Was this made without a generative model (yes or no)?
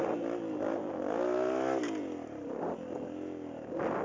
yes